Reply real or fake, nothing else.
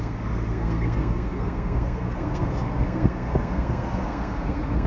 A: fake